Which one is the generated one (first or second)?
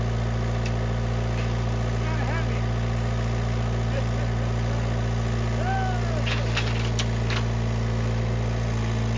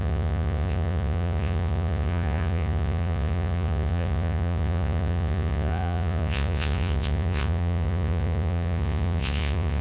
second